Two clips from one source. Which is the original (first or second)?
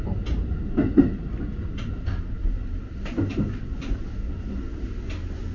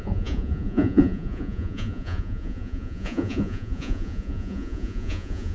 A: first